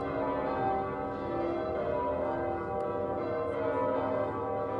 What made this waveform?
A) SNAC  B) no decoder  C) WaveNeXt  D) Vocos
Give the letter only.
B